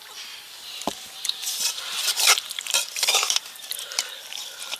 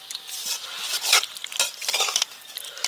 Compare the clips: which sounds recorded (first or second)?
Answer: second